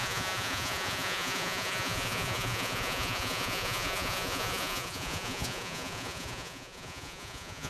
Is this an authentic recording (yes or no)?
no